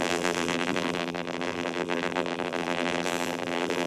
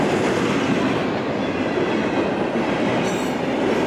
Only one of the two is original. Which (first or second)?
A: second